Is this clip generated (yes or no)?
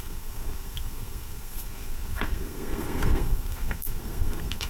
yes